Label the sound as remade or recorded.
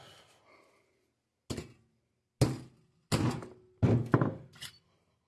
recorded